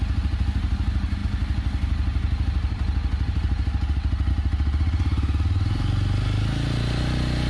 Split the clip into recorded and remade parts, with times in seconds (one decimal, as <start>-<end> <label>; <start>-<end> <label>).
0.0-7.5 recorded